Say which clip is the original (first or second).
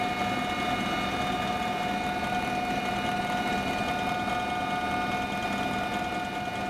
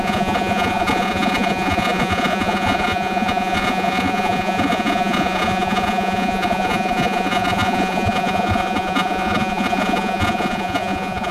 first